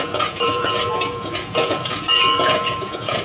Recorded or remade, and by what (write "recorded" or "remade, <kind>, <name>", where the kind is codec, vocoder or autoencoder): remade, vocoder, Vocos